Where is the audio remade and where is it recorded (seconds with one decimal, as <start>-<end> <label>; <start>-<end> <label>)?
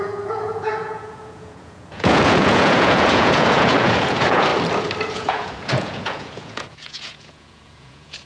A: 0.0-4.5 remade; 4.5-5.0 recorded; 5.0-8.3 remade